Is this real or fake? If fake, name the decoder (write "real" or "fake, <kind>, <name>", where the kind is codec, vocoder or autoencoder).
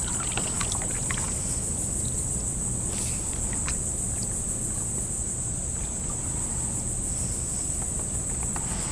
real